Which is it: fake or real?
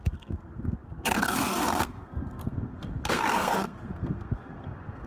fake